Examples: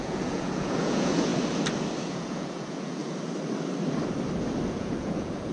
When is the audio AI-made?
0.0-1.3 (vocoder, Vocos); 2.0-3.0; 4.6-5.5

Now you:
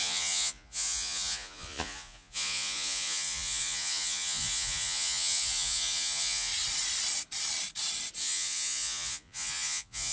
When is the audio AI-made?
0.0-6.5 (vocoder, Vocos); 8.2-10.1

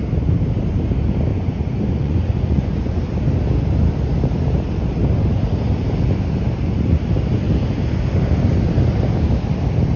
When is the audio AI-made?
1.3-3.0 (vocoder, Vocos)

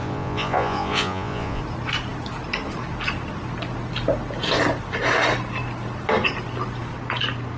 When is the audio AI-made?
0.0-1.6 (vocoder, Vocos)

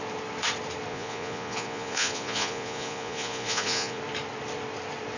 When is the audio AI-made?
0.9-4.0 (vocoder, Vocos)

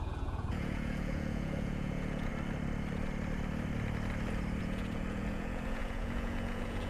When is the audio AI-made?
0.0-2.3 (vocoder, Vocos); 4.6-6.9

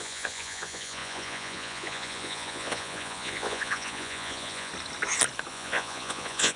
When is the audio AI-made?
0.0-4.7 (vocoder, Vocos); 5.5-6.6

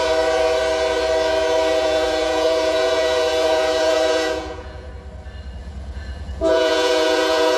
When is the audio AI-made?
1.8-4.9 (vocoder, Vocos); 5.6-7.6